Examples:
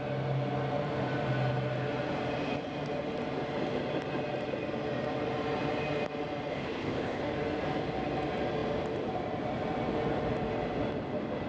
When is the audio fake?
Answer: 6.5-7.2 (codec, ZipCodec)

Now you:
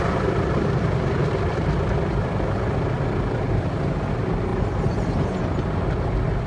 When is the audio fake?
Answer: 1.2-1.8 (vocoder, BigVGAN v2)

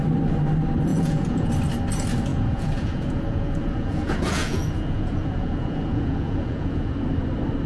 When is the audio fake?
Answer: 0.9-1.5 (vocoder, Vocos); 2.3-6.9

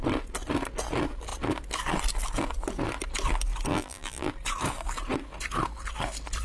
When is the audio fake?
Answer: 3.7-4.3 (vocoder, BigVGAN v2)